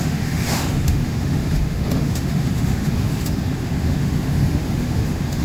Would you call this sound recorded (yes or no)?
no